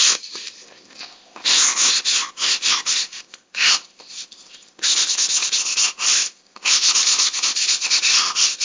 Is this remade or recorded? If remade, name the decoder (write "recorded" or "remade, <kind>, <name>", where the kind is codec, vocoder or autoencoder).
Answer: remade, codec, ZipCodec